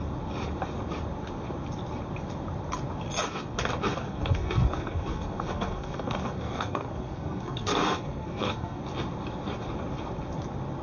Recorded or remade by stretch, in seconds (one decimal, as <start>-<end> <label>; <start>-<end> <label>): 0.0-3.9 recorded; 3.9-8.8 remade; 8.8-10.8 recorded